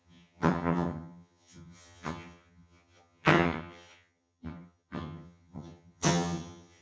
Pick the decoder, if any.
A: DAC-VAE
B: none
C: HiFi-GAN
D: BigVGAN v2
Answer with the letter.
C